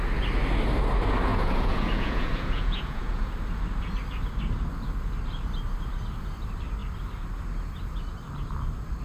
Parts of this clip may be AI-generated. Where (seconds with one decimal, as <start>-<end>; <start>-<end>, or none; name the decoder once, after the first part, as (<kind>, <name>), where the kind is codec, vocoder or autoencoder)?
1.3-3.3 (vocoder, Vocos)